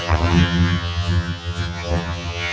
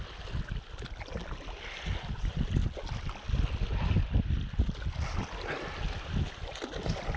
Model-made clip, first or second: first